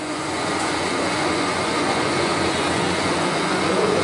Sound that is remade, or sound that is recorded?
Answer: remade